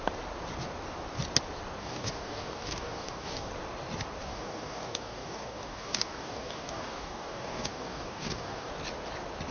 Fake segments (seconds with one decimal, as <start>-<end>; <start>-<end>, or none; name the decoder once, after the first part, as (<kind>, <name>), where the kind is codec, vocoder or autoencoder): 1.8-3.5 (codec, DAC); 4.2-8.7